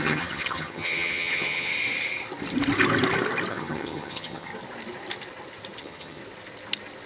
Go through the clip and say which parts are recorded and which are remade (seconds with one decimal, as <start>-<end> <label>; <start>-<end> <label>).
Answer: 0.0-1.7 remade; 1.7-3.5 recorded; 3.5-4.5 remade; 4.5-5.8 recorded; 5.8-6.2 remade; 6.2-7.1 recorded